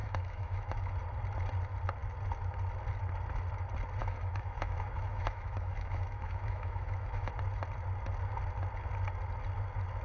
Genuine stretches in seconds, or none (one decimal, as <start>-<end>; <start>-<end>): 0.9-4.0; 7.3-10.0